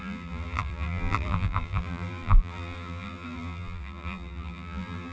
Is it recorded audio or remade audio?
remade